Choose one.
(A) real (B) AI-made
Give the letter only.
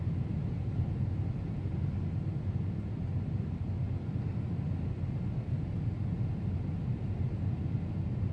A